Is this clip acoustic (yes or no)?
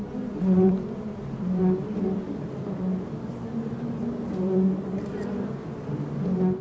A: yes